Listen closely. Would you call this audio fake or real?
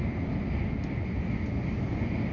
real